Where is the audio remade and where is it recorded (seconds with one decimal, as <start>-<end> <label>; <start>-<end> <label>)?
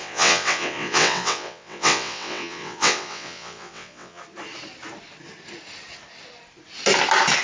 0.0-4.2 remade; 4.2-7.4 recorded